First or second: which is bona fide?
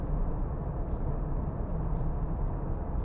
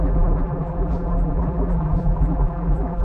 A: first